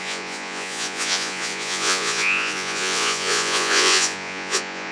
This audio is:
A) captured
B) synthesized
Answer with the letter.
B